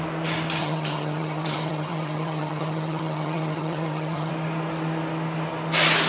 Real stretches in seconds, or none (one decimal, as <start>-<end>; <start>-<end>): 0.0-0.6; 4.3-6.1